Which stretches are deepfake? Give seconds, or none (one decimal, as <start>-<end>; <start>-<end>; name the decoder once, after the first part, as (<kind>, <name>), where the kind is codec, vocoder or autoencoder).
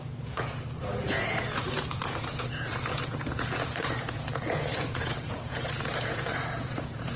0.0-7.2 (vocoder, Vocos)